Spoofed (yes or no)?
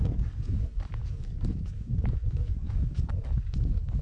yes